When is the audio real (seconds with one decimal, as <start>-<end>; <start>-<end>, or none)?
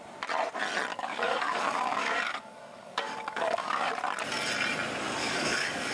0.0-0.9; 3.9-5.2